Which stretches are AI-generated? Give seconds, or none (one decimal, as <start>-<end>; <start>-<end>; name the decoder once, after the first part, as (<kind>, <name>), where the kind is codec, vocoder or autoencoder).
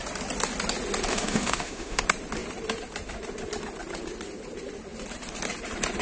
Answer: 1.1-2.0 (autoencoder, DAC-VAE)